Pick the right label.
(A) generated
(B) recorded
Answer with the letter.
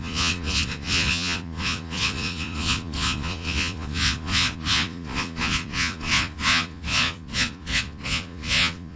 A